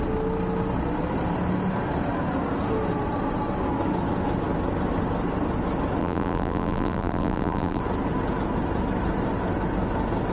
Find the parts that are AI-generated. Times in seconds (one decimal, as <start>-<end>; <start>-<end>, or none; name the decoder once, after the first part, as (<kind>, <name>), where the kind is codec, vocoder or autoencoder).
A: 6.0-7.8 (vocoder, BigVGAN v2)